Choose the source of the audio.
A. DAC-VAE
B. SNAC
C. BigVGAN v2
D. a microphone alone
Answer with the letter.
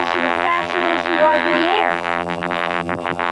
C